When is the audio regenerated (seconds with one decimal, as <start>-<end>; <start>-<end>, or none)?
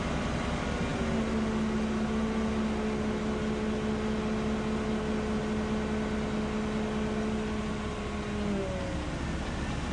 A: none